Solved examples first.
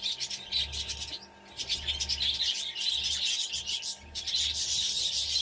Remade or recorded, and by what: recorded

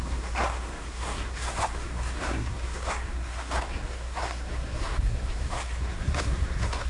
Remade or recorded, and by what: remade, codec, SNAC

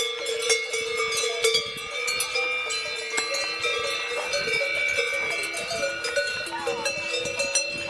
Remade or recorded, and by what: recorded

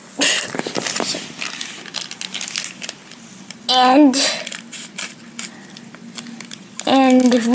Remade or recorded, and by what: recorded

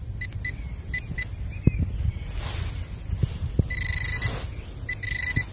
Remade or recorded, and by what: recorded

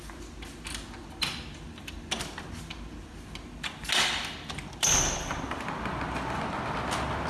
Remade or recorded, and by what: recorded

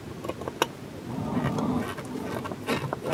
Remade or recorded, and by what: recorded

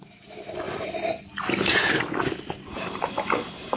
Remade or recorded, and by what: recorded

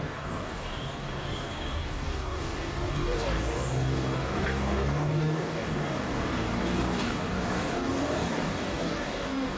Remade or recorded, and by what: remade, codec, DAC